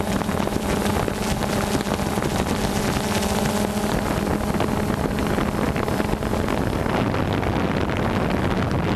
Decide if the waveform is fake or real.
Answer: real